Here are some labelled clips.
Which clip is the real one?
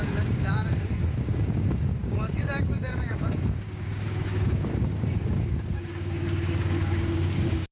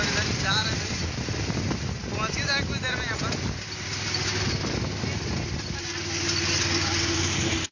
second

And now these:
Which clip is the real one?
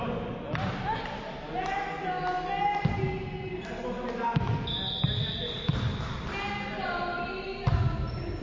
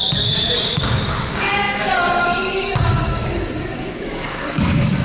first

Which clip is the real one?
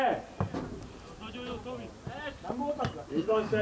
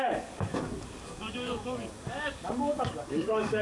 first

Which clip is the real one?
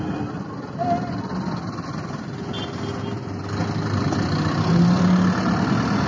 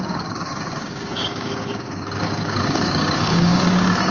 first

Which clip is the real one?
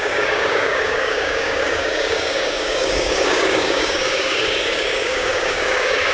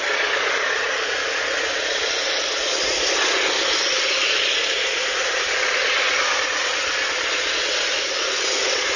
second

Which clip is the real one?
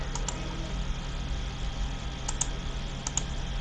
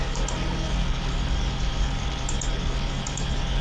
first